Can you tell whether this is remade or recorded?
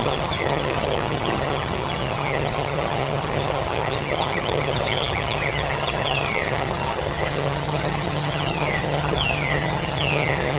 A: remade